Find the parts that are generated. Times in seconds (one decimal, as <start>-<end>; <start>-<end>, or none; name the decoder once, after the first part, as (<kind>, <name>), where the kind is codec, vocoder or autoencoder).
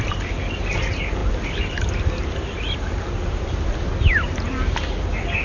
none